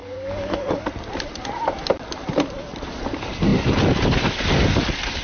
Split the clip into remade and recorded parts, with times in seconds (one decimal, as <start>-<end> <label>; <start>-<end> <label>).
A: 0.0-0.8 remade; 0.8-5.2 recorded

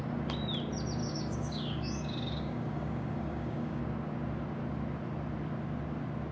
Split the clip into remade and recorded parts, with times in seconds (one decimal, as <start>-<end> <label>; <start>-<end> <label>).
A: 0.0-1.0 recorded; 1.0-3.8 remade; 3.8-6.3 recorded

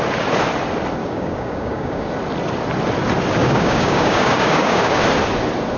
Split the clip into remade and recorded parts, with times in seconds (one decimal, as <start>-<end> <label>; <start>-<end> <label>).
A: 0.0-1.0 recorded; 1.0-2.1 remade; 2.1-3.4 recorded; 3.4-5.0 remade; 5.0-5.8 recorded